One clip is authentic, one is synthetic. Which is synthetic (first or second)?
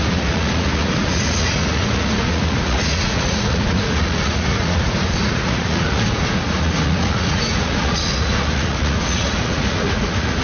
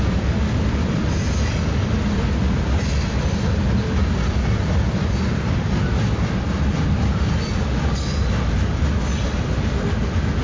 first